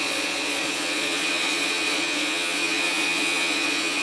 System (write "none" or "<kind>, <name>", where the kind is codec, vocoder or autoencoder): vocoder, Vocos